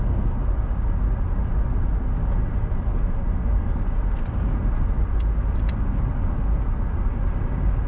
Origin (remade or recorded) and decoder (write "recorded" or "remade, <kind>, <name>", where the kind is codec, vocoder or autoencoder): recorded